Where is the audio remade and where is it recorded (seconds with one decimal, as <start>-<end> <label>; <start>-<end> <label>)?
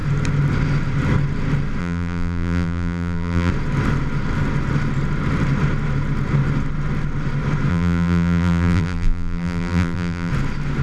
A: 0.0-1.8 recorded; 1.8-3.5 remade; 3.5-7.7 recorded; 7.7-10.3 remade; 10.3-10.8 recorded